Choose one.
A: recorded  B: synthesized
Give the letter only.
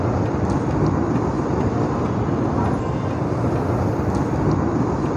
A